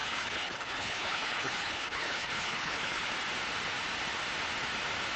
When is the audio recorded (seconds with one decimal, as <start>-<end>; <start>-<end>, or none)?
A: 3.1-5.2